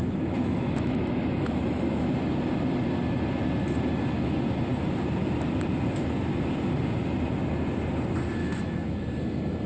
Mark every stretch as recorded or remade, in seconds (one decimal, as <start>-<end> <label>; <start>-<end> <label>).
0.0-2.1 remade; 2.1-8.4 recorded; 8.4-9.1 remade; 9.1-9.7 recorded